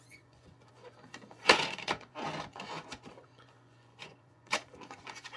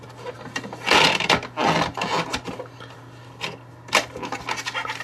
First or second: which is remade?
first